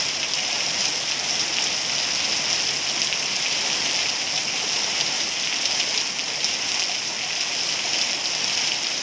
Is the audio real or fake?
real